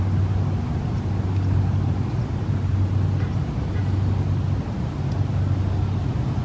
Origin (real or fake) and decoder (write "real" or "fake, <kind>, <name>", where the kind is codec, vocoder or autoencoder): real